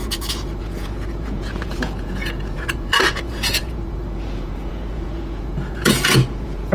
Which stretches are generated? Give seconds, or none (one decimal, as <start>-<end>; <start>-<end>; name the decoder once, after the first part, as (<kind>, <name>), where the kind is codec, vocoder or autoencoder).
0.0-6.7 (vocoder, Vocos)